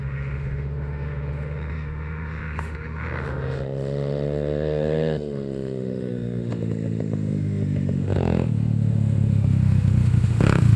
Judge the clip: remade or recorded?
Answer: remade